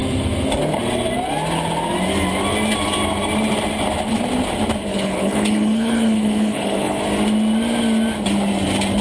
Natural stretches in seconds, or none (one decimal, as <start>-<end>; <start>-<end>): 0.0-4.9; 7.0-9.0